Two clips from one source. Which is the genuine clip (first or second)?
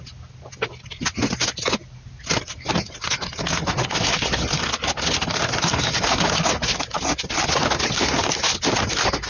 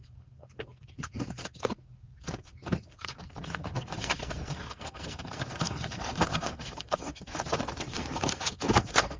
first